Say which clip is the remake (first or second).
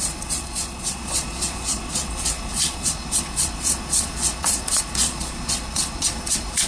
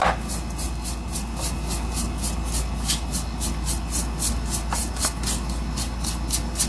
first